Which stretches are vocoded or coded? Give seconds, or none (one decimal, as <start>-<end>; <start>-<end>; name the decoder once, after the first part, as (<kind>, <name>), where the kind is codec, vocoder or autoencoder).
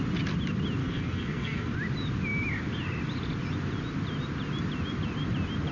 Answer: 0.8-1.7 (codec, SNAC)